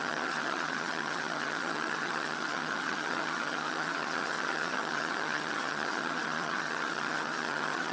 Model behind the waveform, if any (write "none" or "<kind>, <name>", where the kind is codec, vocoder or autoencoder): vocoder, HiFi-GAN